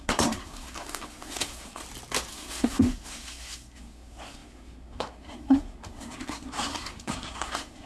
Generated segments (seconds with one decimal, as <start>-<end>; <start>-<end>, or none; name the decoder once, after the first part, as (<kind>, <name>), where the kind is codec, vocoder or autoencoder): 0.0-1.8 (codec, SNAC); 2.3-7.9